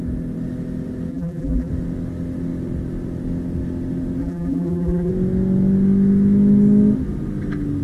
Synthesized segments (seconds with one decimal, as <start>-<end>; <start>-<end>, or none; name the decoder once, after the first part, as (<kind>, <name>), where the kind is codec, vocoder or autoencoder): 1.1-1.7 (vocoder, BigVGAN v2); 4.2-5.1